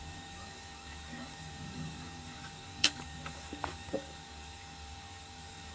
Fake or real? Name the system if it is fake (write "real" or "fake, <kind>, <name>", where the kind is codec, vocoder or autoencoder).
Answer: fake, codec, DAC